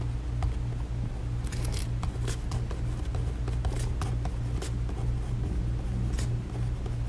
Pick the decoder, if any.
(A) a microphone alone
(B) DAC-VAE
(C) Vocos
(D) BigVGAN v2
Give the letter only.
A